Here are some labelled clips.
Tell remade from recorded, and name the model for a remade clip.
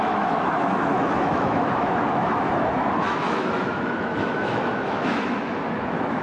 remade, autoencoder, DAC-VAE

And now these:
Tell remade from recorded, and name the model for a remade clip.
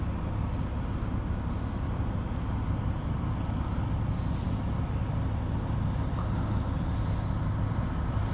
recorded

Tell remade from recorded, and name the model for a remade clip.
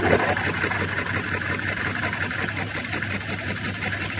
recorded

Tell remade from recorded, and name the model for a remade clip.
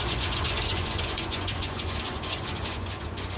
remade, vocoder, Vocos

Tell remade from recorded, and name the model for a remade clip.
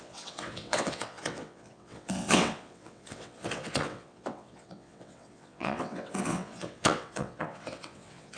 remade, vocoder, WaveNeXt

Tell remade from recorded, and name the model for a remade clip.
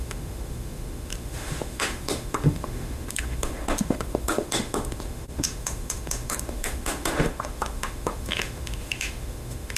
remade, autoencoder, DAC-VAE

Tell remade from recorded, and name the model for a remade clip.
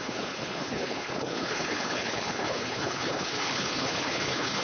remade, codec, HILCodec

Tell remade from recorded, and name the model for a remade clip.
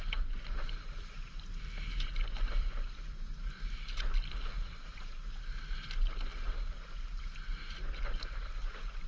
recorded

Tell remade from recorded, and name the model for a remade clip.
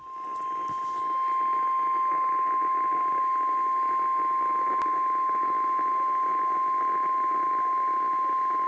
recorded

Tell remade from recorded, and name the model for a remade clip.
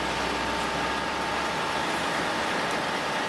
recorded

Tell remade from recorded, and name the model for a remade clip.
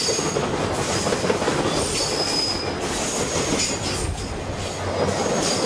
recorded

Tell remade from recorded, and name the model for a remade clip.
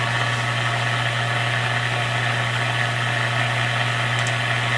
recorded